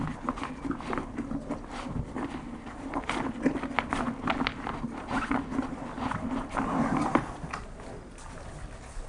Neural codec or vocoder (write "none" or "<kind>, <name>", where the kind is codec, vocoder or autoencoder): none